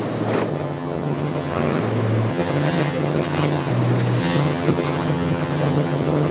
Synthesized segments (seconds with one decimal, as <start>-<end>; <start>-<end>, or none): 0.5-1.8; 2.3-3.7; 4.2-6.3